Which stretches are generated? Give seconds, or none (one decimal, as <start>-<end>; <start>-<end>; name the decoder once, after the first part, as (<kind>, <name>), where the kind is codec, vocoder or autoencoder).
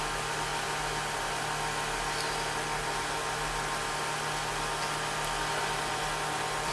none